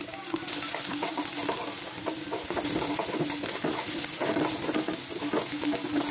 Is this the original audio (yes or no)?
yes